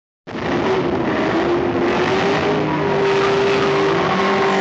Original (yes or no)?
yes